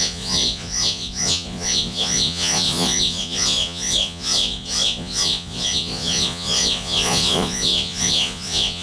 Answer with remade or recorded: remade